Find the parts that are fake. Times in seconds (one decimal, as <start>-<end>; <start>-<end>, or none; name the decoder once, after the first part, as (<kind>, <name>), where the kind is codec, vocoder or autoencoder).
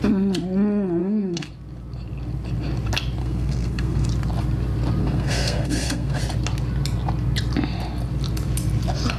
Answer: 1.0-1.5 (codec, SNAC); 3.2-4.1; 5.0-6.2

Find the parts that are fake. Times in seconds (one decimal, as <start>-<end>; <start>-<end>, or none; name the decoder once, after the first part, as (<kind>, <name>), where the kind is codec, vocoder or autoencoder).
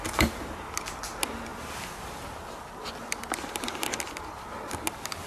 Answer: none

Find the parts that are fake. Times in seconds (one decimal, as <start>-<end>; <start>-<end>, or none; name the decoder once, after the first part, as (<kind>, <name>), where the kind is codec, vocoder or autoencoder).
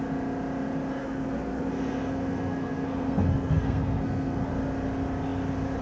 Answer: 1.0-4.5 (codec, SNAC)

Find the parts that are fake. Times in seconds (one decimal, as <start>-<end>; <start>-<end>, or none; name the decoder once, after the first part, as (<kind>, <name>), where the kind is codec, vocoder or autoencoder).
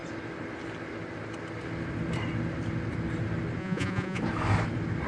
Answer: 3.6-4.2 (vocoder, Vocos)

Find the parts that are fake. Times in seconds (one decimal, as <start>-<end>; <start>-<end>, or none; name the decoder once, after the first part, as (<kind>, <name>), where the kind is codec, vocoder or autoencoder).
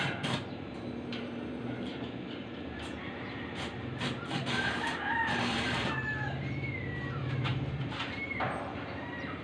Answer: 0.0-9.4 (vocoder, BigVGAN v2)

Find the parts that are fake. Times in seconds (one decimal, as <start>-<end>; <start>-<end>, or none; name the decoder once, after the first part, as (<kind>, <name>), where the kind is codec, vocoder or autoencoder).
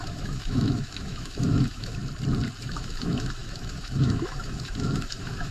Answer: 0.0-2.0 (autoencoder, DAC-VAE); 2.6-5.5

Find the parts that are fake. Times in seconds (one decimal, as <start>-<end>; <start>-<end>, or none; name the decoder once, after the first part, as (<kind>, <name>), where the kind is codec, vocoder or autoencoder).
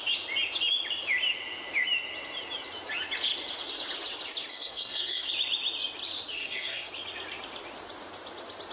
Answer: 4.5-5.3 (codec, SNAC); 6.3-6.9